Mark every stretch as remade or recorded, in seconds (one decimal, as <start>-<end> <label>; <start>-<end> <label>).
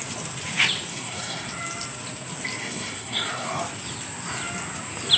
0.0-0.9 recorded; 0.9-1.5 remade; 1.5-2.6 recorded; 2.6-3.6 remade; 3.6-5.2 recorded